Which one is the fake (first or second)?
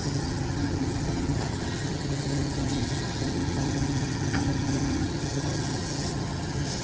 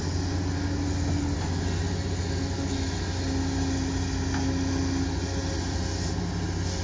first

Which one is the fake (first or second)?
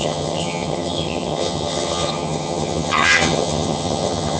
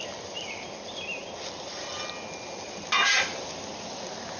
first